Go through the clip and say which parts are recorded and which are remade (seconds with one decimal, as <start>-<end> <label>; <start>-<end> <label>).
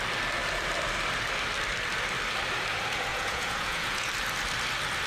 0.0-3.1 recorded; 3.1-4.1 remade; 4.1-5.1 recorded